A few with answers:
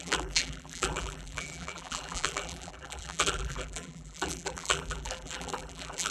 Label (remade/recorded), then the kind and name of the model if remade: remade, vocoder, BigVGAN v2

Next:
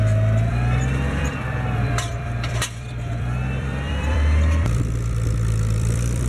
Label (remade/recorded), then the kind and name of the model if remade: remade, vocoder, BigVGAN v2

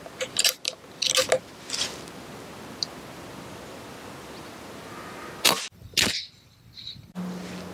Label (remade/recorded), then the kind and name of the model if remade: recorded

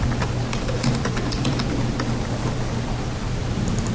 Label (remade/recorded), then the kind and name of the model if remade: recorded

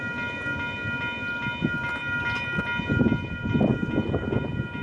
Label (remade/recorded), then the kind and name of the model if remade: recorded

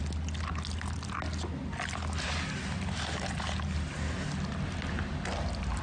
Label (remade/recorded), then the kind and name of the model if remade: recorded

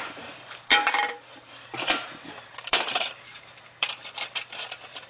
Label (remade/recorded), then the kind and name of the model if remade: remade, vocoder, BigVGAN v2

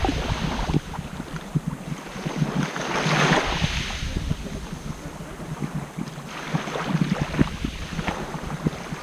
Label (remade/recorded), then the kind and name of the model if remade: recorded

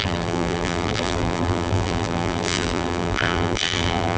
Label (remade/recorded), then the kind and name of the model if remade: remade, vocoder, BigVGAN v2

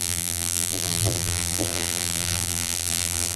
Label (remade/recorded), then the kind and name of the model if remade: remade, vocoder, BigVGAN v2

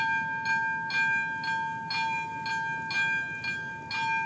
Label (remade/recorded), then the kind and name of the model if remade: recorded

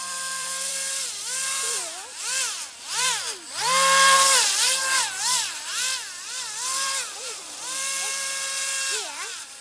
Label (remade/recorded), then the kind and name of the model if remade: remade, vocoder, BigVGAN v2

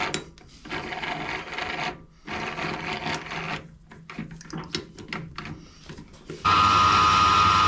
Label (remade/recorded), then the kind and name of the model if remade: recorded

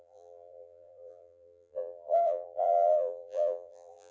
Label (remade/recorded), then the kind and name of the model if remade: remade, vocoder, BigVGAN v2